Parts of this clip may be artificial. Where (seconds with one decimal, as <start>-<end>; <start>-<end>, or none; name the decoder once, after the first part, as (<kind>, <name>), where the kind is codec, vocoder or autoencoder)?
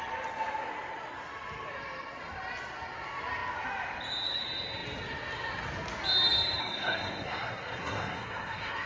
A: 6.6-8.9 (codec, SNAC)